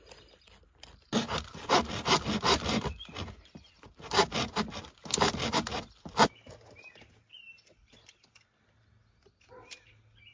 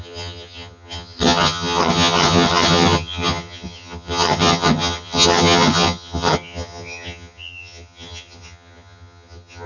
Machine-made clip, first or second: second